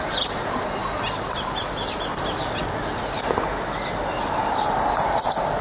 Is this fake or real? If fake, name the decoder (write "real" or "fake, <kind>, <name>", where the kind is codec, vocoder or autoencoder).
real